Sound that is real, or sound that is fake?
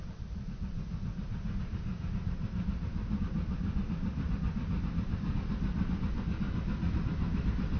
real